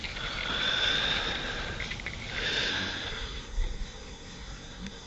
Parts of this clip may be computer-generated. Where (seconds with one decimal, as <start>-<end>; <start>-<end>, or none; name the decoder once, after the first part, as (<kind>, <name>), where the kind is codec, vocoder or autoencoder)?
2.7-5.1 (codec, SNAC)